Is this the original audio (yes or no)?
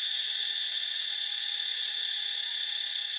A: no